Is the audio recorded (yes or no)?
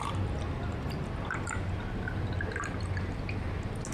yes